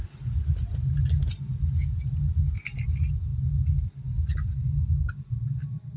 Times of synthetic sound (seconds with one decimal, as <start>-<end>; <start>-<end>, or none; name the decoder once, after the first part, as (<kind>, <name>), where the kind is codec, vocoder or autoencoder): none